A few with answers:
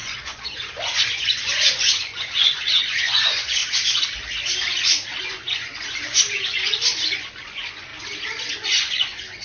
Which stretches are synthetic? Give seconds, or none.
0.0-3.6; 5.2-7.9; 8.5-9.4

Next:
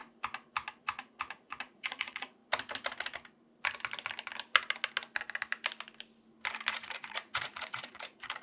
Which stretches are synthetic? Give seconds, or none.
0.8-2.4; 6.7-8.4

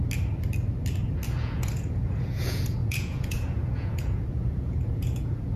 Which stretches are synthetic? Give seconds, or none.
1.4-5.6

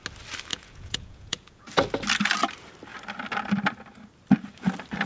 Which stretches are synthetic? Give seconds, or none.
0.5-1.7

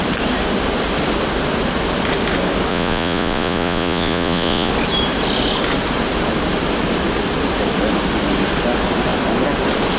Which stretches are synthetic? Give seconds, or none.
2.7-4.7

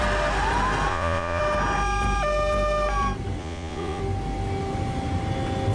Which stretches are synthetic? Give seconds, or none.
0.9-1.4; 3.4-4.0

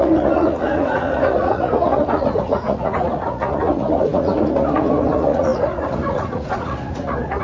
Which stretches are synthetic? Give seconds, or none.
0.0-7.4

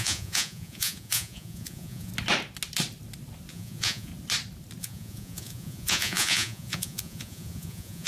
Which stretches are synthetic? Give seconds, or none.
0.0-2.1; 3.5-4.1; 4.8-8.1